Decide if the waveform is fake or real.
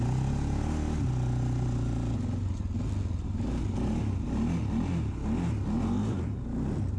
real